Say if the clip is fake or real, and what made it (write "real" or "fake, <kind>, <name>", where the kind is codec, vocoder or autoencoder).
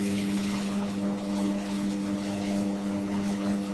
fake, codec, HILCodec